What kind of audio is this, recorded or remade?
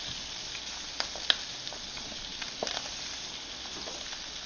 recorded